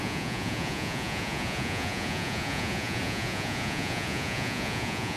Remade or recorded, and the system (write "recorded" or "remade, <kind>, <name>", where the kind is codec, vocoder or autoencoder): remade, vocoder, Vocos